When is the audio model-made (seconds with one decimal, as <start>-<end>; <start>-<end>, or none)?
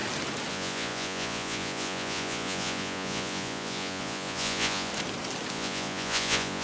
0.5-4.9; 5.5-6.6